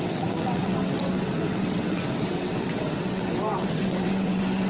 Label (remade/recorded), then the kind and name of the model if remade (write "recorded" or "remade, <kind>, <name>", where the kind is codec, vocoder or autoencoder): remade, vocoder, WaveNeXt